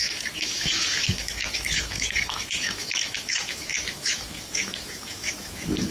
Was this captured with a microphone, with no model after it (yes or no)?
no